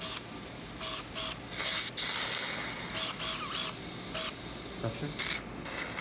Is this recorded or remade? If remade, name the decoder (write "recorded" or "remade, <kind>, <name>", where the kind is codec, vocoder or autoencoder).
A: recorded